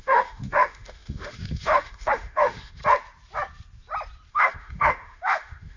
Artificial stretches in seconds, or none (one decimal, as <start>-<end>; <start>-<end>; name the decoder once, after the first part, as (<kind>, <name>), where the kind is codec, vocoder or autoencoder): 0.0-2.8 (autoencoder, DAC-VAE); 4.3-5.8